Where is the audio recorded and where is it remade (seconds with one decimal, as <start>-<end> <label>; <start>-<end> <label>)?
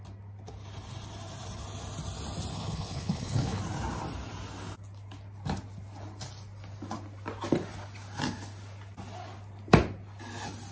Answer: 0.0-2.5 recorded; 2.5-3.6 remade; 3.6-10.7 recorded